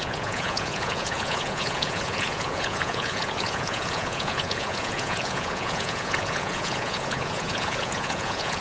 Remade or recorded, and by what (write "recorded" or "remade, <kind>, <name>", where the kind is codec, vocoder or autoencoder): remade, vocoder, Vocos